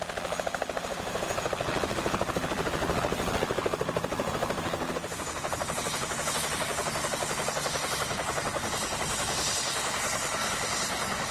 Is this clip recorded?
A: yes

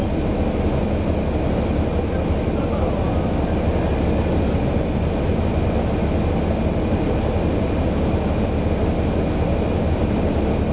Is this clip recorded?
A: yes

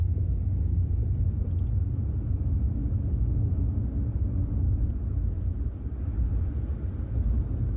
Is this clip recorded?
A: yes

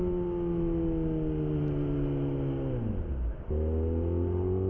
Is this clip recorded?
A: yes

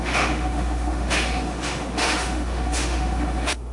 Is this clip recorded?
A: no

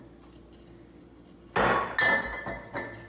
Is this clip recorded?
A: yes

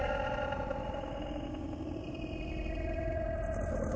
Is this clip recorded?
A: yes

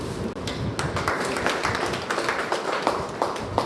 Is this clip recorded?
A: yes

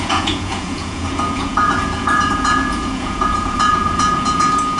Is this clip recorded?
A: no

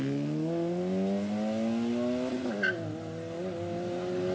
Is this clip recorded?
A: yes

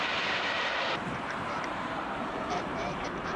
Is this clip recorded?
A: no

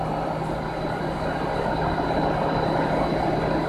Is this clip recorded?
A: yes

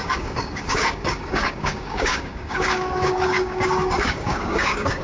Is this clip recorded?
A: no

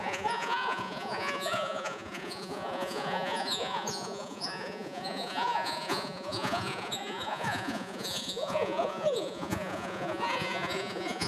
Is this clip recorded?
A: no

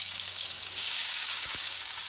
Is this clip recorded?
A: no